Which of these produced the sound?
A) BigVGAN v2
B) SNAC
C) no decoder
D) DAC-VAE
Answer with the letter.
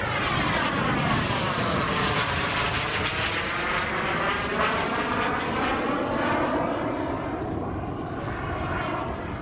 C